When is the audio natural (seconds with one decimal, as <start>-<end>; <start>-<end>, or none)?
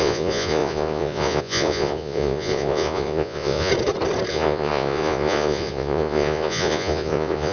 3.7-4.3